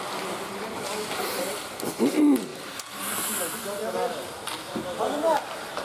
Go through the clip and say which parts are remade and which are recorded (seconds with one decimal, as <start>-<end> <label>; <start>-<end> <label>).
0.0-5.8 recorded